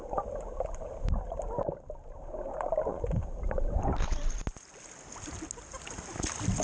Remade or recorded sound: recorded